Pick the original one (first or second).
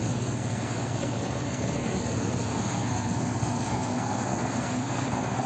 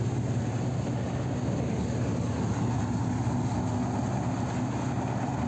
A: second